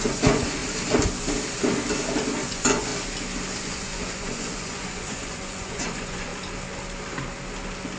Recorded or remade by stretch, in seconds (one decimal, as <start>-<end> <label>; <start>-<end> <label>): 0.0-0.6 remade; 0.6-2.5 recorded; 2.5-2.9 remade; 2.9-3.6 recorded; 3.6-6.3 remade; 6.3-8.0 recorded